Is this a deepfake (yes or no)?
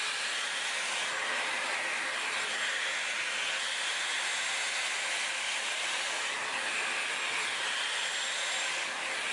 no